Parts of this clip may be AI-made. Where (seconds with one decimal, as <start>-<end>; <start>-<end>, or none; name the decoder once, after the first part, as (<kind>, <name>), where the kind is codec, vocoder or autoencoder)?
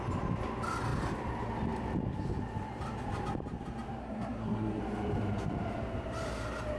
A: 4.0-4.8 (codec, SNAC)